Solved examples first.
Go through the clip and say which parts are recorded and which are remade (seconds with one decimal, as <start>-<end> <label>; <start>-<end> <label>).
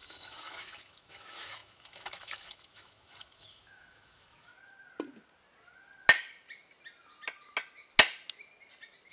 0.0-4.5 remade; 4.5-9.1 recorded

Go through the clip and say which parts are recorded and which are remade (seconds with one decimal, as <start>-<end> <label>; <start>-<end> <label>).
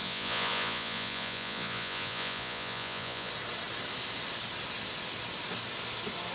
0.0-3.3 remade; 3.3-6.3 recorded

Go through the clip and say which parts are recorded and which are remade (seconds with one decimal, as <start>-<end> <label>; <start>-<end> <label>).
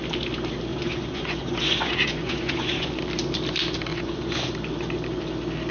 0.0-0.7 recorded; 0.7-2.9 remade; 2.9-3.9 recorded; 3.9-4.5 remade; 4.5-5.7 recorded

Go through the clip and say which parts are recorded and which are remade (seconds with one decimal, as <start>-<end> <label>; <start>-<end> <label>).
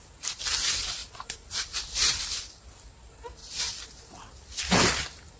0.0-1.0 recorded; 1.0-1.6 remade; 1.6-5.4 recorded